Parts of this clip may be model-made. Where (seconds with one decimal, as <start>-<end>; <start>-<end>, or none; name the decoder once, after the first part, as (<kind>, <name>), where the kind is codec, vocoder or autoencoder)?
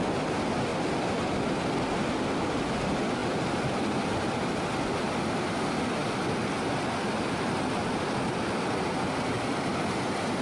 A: 0.7-2.8 (vocoder, BigVGAN v2)